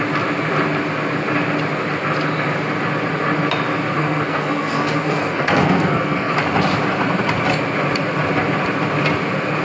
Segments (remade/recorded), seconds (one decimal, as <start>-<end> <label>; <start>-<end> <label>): 0.0-4.0 recorded; 4.0-6.3 remade; 6.3-9.6 recorded

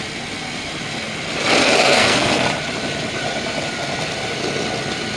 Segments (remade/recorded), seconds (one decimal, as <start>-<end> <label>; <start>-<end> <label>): 0.0-1.6 recorded; 1.6-2.4 remade; 2.4-5.2 recorded